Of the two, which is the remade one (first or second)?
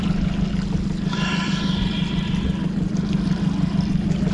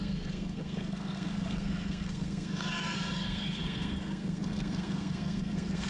second